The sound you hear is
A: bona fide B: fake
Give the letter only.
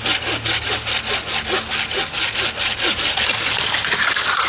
A